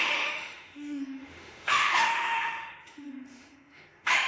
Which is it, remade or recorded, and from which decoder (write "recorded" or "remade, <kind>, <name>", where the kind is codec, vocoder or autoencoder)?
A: remade, autoencoder, DAC-VAE